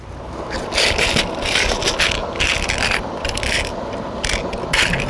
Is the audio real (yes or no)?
yes